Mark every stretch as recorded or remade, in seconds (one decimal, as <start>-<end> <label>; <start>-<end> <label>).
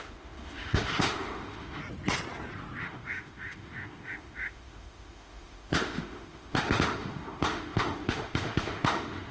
0.0-1.8 remade; 1.8-2.8 recorded; 2.8-9.3 remade